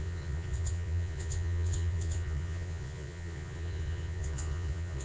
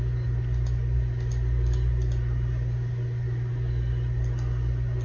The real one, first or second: second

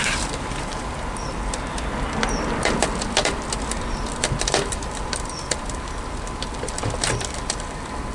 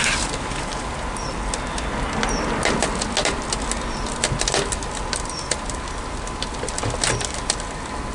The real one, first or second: second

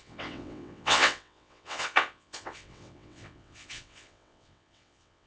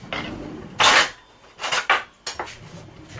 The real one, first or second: second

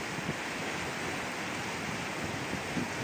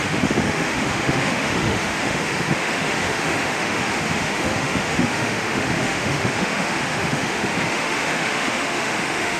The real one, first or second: first